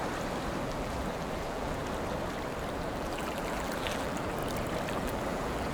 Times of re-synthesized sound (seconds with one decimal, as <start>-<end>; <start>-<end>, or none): 0.6-1.8; 2.8-4.4; 4.9-5.7